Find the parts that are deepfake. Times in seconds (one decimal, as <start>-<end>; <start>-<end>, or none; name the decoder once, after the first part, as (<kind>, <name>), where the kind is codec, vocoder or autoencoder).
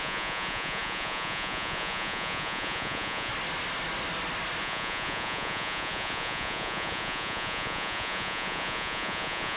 0.0-3.3 (vocoder, Vocos); 4.6-9.6